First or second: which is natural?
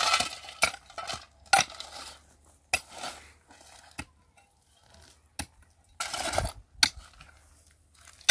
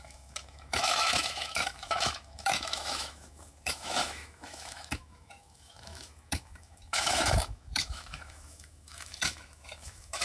first